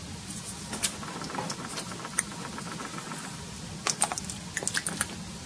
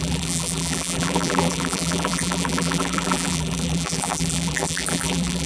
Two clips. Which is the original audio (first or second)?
first